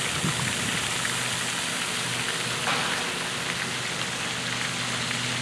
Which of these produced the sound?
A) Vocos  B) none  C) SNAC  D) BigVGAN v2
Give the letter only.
B